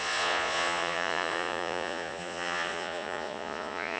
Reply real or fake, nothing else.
fake